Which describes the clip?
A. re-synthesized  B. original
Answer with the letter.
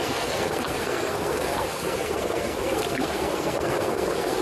A